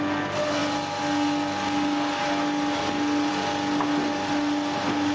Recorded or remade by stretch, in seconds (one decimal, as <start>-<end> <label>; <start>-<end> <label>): 0.0-5.1 recorded